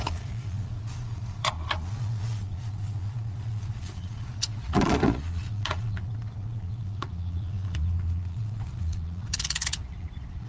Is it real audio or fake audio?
fake